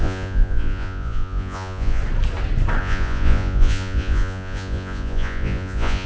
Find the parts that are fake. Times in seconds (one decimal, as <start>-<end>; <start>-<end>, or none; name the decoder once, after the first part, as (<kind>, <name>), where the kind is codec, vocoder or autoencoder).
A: 0.0-2.0 (vocoder, Vocos); 2.8-6.1